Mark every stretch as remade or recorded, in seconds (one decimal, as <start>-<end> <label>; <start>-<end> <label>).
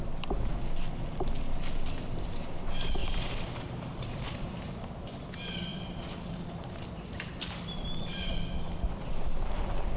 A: 0.0-3.0 recorded; 3.0-4.9 remade; 4.9-5.7 recorded; 5.7-8.3 remade; 8.3-10.0 recorded